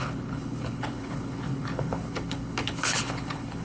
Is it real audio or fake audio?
fake